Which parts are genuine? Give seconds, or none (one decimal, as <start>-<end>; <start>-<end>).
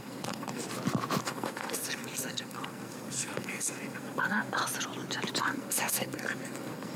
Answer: 0.6-1.2; 4.6-5.4